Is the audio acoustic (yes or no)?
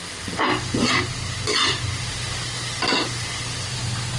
yes